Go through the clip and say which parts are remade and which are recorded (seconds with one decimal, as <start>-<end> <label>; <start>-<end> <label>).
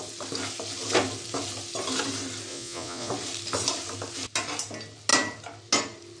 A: 0.0-2.5 recorded; 2.5-3.1 remade; 3.1-6.2 recorded